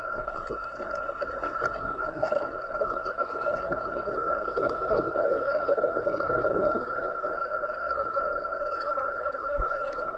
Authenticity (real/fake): fake